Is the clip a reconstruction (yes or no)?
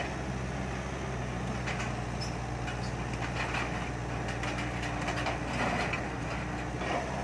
no